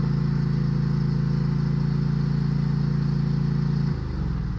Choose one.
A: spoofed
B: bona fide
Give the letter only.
B